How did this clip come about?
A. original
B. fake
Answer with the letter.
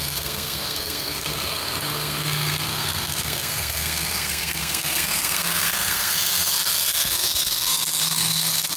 B